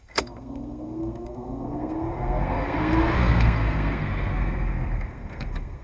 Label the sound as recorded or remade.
remade